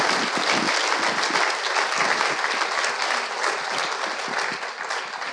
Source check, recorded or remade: recorded